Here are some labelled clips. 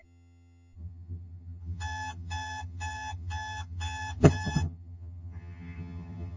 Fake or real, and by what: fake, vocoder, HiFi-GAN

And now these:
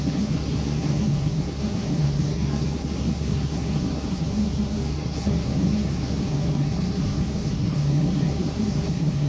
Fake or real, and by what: fake, codec, SNAC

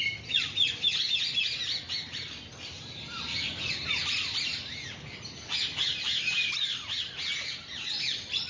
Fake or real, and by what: real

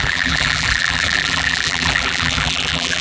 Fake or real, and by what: fake, vocoder, BigVGAN v2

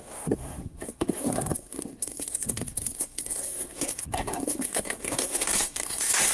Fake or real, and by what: fake, codec, SNAC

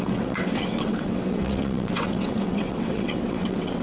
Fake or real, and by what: fake, vocoder, WaveNeXt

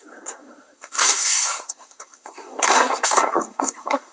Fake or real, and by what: fake, codec, SNAC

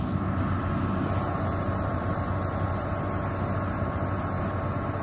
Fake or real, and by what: real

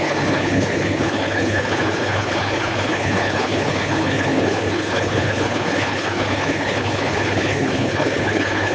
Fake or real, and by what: fake, codec, HILCodec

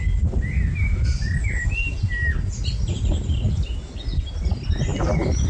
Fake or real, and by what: real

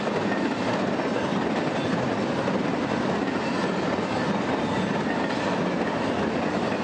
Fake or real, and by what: real